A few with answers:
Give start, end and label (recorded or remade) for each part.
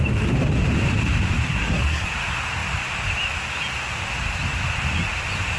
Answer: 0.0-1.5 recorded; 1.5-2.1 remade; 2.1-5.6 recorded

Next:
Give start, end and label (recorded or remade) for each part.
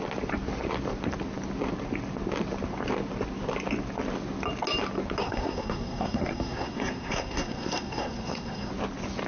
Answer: 0.0-5.2 recorded; 5.2-8.7 remade; 8.7-9.3 recorded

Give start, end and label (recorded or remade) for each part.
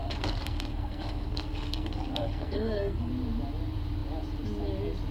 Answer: 0.0-3.1 remade; 3.1-5.1 recorded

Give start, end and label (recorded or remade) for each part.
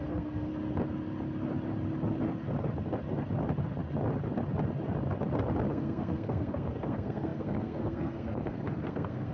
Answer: 0.0-0.5 remade; 0.5-5.7 recorded; 5.7-9.3 remade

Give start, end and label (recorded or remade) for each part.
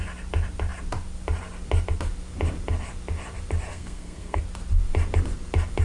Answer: 0.0-3.7 recorded; 3.7-4.4 remade; 4.4-5.8 recorded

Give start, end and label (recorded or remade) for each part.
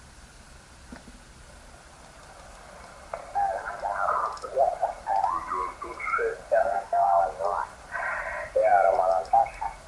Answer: 0.0-6.6 recorded; 6.6-7.2 remade; 7.2-9.9 recorded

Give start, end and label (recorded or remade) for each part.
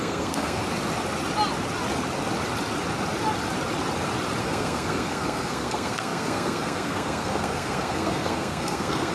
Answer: 0.0-0.6 remade; 0.6-4.4 recorded; 4.4-9.1 remade